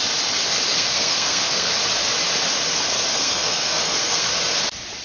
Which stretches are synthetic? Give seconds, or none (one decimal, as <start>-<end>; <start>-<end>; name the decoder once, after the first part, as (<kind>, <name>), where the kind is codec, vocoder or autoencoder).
0.7-1.7 (codec, SNAC); 3.1-4.3